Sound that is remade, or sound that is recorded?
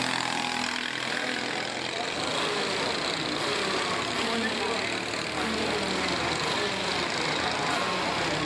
recorded